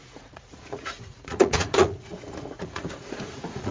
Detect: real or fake fake